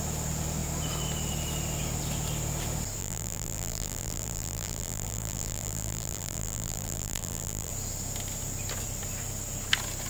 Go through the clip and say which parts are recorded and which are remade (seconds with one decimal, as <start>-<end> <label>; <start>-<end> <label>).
0.0-3.0 recorded; 3.0-7.7 remade; 7.7-10.1 recorded

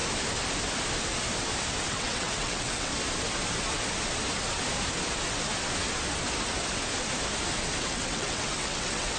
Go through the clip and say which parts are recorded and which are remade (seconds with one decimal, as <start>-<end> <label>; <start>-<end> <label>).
0.0-1.9 recorded; 1.9-2.9 remade; 2.9-7.8 recorded; 7.8-9.2 remade

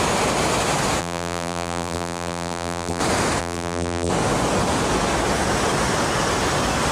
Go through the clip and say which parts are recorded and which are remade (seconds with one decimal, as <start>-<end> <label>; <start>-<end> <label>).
0.0-1.0 recorded; 1.0-3.0 remade; 3.0-3.4 recorded; 3.4-4.1 remade; 4.1-6.9 recorded

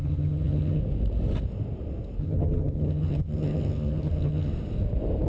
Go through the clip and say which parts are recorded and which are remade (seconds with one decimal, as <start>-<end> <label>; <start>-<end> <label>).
0.0-0.8 remade; 0.8-2.2 recorded; 2.2-4.5 remade; 4.5-5.3 recorded

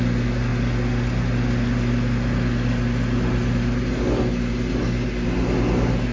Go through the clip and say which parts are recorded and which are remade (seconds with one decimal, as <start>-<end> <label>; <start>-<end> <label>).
0.0-6.1 recorded

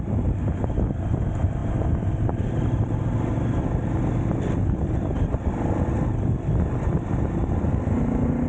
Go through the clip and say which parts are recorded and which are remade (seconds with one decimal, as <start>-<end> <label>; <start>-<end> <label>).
0.0-8.5 recorded